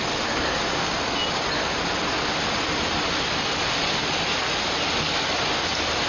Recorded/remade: recorded